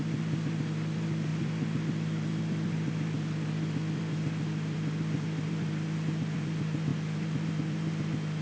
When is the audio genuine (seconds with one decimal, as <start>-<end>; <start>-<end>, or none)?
0.0-8.4